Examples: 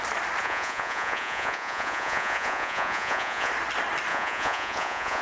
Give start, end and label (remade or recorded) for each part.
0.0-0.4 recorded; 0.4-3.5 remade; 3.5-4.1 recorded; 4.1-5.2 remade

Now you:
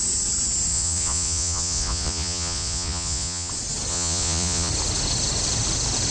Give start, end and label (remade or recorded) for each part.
0.0-0.7 recorded; 0.7-3.5 remade; 3.5-3.9 recorded; 3.9-4.7 remade; 4.7-6.1 recorded